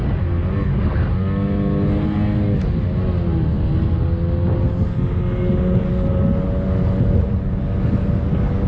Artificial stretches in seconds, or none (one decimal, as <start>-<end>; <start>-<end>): none